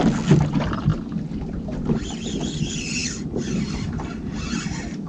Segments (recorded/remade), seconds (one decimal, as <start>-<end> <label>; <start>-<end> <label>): 0.0-5.1 recorded